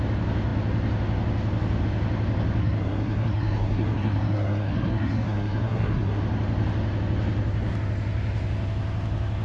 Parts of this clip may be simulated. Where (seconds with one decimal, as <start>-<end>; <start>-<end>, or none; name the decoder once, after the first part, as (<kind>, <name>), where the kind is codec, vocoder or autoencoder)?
2.6-6.2 (codec, SNAC)